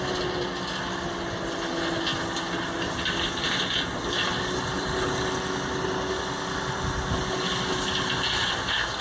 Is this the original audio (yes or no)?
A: yes